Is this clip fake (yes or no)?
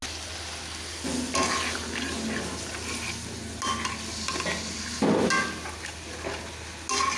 no